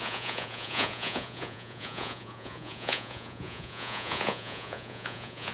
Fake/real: fake